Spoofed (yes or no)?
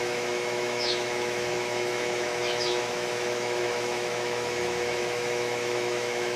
yes